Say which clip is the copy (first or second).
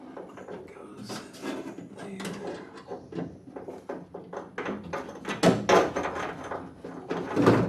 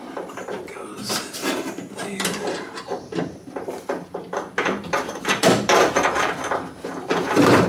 second